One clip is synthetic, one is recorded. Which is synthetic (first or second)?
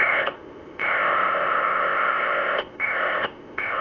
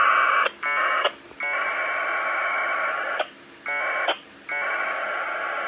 first